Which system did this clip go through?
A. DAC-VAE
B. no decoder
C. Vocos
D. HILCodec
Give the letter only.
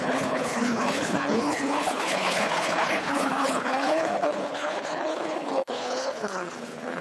D